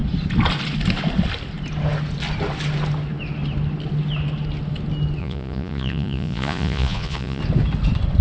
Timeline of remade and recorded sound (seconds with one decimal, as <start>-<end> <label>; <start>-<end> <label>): 0.0-5.2 recorded; 5.2-7.4 remade; 7.4-8.2 recorded